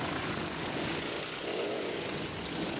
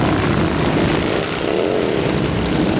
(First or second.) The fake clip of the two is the first